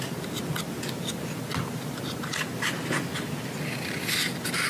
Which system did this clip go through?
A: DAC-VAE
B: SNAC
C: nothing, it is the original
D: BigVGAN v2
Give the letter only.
C